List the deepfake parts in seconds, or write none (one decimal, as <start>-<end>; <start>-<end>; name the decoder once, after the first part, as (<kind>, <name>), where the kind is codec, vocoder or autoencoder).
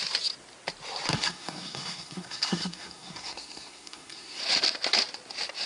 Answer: 1.1-4.4 (codec, SNAC)